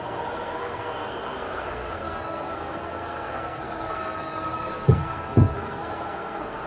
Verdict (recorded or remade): remade